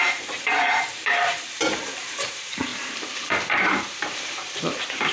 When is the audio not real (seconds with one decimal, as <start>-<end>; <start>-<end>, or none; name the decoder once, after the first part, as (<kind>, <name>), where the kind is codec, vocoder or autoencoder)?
0.0-5.1 (vocoder, BigVGAN v2)